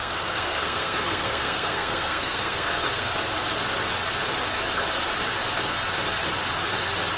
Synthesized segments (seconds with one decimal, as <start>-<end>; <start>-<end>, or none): 0.0-3.1